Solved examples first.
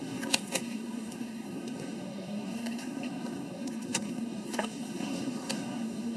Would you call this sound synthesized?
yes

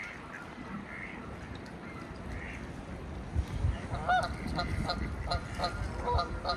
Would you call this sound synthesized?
no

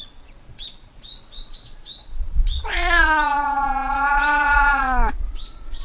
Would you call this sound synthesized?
yes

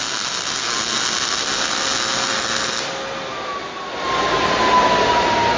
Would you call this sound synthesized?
no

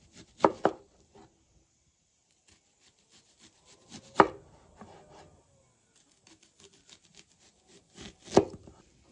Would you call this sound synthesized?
no